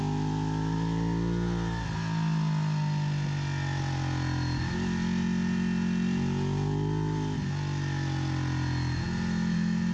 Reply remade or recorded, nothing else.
recorded